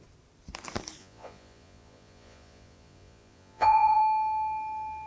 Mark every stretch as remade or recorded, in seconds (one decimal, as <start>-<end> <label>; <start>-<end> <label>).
0.0-1.0 recorded; 1.0-4.0 remade; 4.0-5.1 recorded